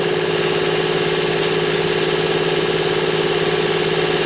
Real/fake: real